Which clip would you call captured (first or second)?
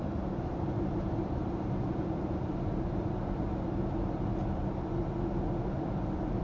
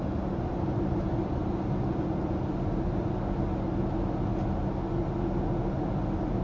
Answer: second